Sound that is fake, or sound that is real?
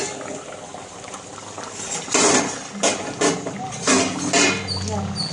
real